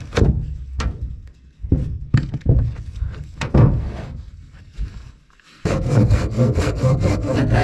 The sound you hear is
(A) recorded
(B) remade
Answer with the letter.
B